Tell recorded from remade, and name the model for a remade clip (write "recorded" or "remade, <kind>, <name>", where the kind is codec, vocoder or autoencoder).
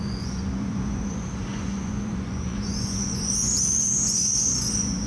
remade, vocoder, Vocos